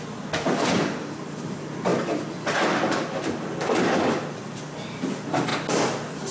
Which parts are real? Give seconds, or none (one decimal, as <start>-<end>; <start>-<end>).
0.0-6.3